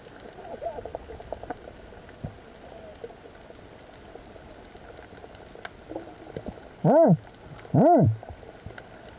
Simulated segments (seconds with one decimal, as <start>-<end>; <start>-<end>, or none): none

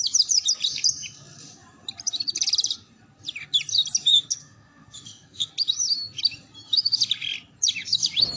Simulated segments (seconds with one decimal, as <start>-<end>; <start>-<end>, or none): 4.1-5.5

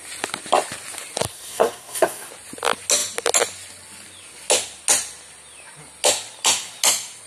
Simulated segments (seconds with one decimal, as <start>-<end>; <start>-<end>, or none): 1.3-2.3

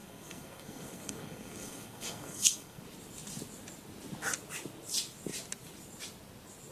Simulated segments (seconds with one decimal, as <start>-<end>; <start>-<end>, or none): 0.0-2.8